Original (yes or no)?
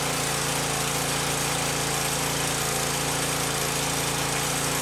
yes